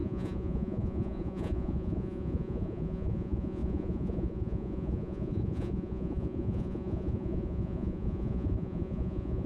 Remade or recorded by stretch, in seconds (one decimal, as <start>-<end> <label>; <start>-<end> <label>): 0.0-9.5 remade